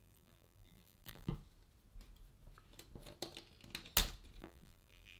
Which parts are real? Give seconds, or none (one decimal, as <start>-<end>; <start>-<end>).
1.3-4.4